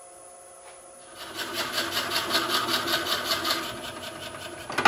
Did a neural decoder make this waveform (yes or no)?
no